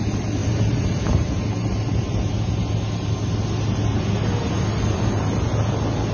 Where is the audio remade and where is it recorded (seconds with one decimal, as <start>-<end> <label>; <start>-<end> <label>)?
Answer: 0.0-0.4 recorded; 0.4-2.5 remade; 2.5-3.9 recorded; 3.9-4.5 remade; 4.5-6.1 recorded